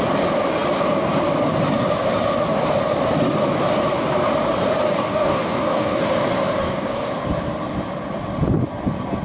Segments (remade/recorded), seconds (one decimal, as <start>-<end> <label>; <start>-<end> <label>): 0.0-5.1 recorded; 5.1-6.0 remade; 6.0-6.6 recorded; 6.6-7.1 remade; 7.1-9.2 recorded